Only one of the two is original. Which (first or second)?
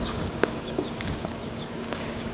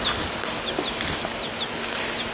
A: second